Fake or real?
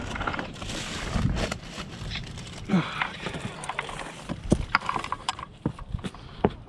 fake